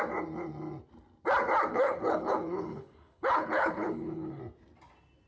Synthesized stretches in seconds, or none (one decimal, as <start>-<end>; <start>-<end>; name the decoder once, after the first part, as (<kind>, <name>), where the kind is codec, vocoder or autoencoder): 1.7-4.4 (codec, HILCodec)